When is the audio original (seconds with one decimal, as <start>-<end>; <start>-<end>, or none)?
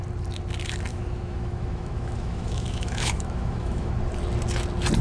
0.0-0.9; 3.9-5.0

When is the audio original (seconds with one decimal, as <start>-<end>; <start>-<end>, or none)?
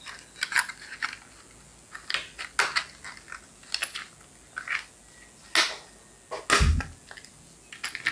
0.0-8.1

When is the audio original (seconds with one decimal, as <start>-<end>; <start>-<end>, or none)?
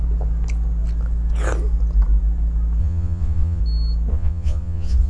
0.0-2.8; 3.6-4.1